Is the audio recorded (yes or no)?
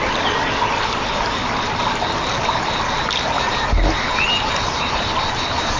yes